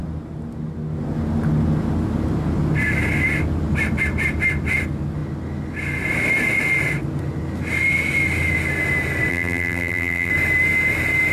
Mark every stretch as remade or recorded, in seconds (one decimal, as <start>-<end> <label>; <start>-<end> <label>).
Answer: 0.0-9.3 recorded; 9.3-10.3 remade; 10.3-11.3 recorded